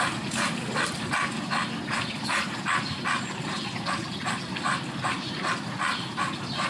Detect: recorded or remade recorded